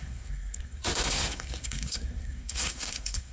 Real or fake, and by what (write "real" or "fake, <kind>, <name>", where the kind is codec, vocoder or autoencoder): fake, codec, SNAC